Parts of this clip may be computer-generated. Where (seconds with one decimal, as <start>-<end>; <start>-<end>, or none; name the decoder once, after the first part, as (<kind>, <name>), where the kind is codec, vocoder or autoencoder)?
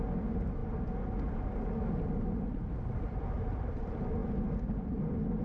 none